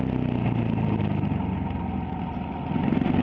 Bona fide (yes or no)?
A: yes